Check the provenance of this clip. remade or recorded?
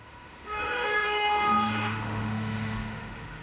remade